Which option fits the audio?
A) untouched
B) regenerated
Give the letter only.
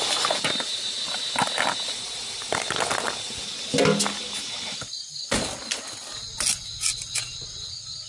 A